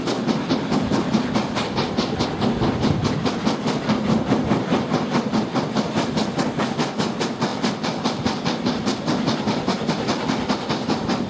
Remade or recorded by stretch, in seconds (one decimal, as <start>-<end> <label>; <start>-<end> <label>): 0.0-7.5 recorded; 7.5-11.3 remade